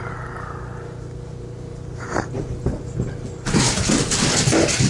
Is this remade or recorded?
recorded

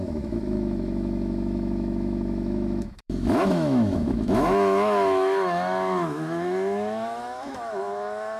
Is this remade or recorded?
remade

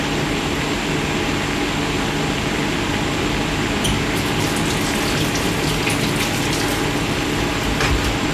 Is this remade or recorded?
recorded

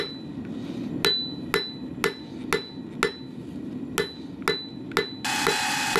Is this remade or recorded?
recorded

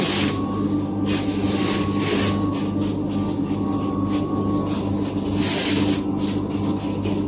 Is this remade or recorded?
recorded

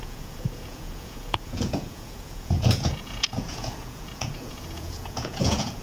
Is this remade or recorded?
remade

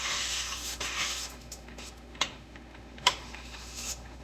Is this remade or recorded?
remade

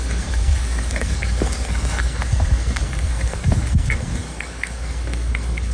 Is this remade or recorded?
remade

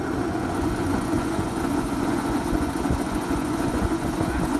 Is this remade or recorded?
remade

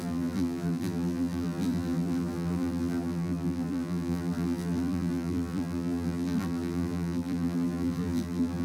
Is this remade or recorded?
remade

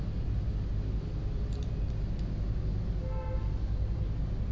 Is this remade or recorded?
recorded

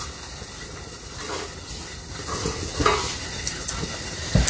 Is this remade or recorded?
recorded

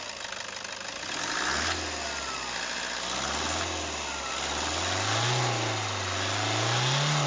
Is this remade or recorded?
recorded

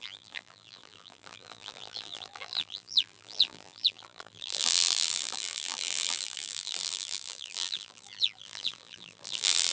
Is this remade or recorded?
remade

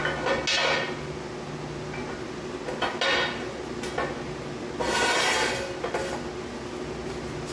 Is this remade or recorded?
recorded